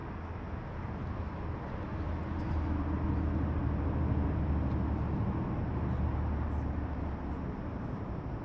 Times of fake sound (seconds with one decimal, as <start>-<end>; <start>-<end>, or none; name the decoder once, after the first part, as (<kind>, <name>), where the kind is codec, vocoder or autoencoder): none